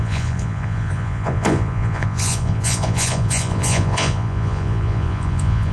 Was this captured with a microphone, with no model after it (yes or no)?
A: no